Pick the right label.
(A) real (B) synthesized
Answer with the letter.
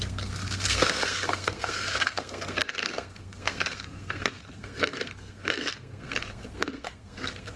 B